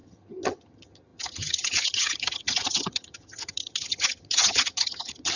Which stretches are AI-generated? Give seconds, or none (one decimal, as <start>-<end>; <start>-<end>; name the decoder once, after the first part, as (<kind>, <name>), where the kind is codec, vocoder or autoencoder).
0.0-5.4 (vocoder, HiFi-GAN)